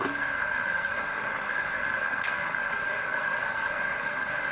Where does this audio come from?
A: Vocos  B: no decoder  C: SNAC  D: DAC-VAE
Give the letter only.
C